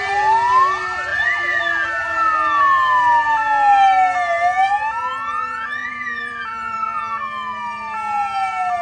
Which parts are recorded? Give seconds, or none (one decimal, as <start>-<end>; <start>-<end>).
0.0-1.1; 1.6-5.8; 7.0-8.8